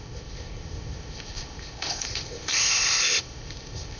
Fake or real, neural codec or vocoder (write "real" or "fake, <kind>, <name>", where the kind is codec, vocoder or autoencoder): fake, codec, ZipCodec